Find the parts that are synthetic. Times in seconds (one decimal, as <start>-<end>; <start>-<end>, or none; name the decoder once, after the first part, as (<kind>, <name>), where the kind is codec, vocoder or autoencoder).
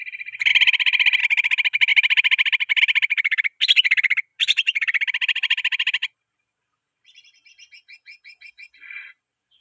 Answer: none